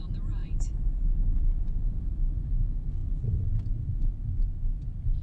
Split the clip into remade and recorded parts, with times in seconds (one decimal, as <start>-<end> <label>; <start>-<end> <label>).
0.0-0.4 recorded; 0.4-2.5 remade; 2.5-5.2 recorded